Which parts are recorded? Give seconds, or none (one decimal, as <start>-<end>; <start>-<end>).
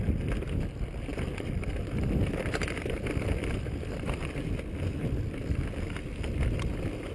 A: 0.0-7.1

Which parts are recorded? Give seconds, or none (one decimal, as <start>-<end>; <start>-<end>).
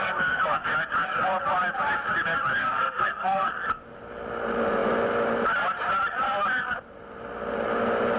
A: 0.7-2.6; 3.5-8.2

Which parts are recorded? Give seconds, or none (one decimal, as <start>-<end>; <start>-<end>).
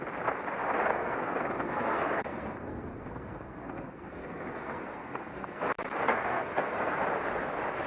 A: 0.0-0.9; 5.6-6.0; 7.0-7.9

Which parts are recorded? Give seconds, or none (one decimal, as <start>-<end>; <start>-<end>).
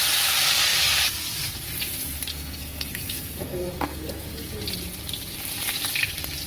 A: 0.0-2.3; 4.5-6.5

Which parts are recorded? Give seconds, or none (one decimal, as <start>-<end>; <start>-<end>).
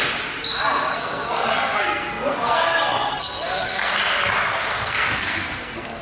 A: 0.0-0.9; 3.9-4.7